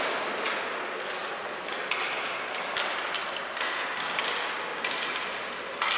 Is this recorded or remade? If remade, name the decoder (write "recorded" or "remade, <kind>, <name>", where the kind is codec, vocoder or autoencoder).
recorded